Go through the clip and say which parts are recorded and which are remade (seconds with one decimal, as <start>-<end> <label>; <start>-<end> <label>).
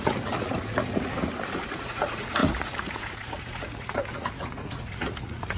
0.0-5.6 remade